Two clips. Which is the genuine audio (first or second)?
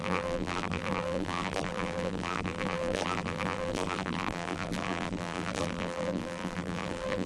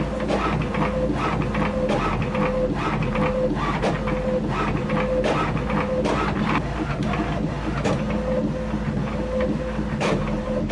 second